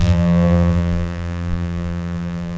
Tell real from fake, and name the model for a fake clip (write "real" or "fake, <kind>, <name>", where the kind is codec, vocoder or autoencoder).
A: fake, vocoder, BigVGAN v2